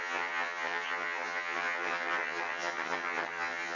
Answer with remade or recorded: remade